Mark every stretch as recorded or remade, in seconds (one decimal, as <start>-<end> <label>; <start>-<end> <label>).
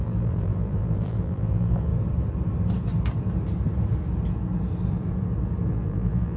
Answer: 0.0-1.9 remade; 1.9-5.7 recorded; 5.7-6.4 remade